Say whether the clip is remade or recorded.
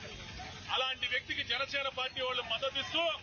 recorded